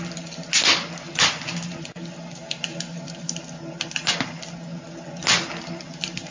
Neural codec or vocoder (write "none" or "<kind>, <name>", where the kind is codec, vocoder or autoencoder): none